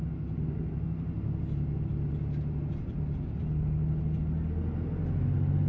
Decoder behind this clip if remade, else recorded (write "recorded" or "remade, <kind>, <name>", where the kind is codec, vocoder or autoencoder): recorded